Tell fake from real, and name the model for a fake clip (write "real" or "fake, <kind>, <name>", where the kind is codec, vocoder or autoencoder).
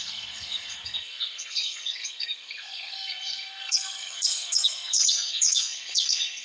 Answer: fake, codec, SNAC